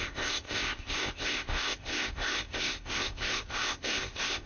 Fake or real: fake